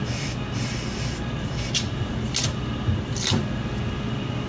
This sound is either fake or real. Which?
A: real